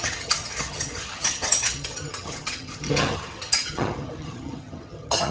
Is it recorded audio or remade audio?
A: remade